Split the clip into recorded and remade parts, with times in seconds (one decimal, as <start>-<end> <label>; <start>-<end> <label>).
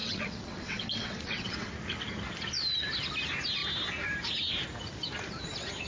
0.0-1.7 remade; 1.7-5.9 recorded